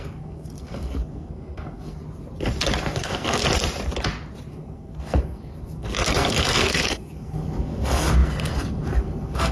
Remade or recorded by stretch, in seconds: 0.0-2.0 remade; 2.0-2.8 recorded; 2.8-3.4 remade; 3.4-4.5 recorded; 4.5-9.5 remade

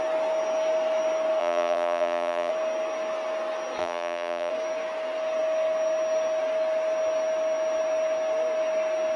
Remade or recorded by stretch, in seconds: 0.0-1.4 recorded; 1.4-2.5 remade; 2.5-3.8 recorded; 3.8-4.5 remade; 4.5-9.2 recorded

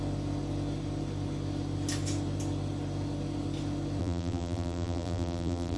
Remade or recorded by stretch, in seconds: 0.0-4.0 recorded; 4.0-5.8 remade

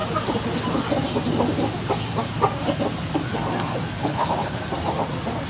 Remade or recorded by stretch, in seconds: 0.0-4.0 recorded; 4.0-4.6 remade; 4.6-5.5 recorded

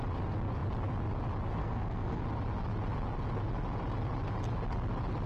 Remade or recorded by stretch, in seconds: 0.0-1.6 recorded; 1.6-2.2 remade; 2.2-5.3 recorded